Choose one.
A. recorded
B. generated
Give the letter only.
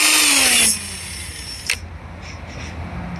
A